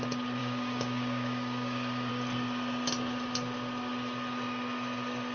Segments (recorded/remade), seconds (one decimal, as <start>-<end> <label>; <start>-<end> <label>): 0.0-0.4 recorded; 0.4-2.1 remade; 2.1-5.3 recorded